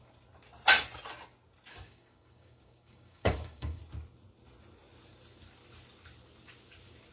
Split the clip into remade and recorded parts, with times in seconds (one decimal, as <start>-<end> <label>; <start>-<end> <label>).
0.0-1.7 recorded; 1.7-3.8 remade; 3.8-7.1 recorded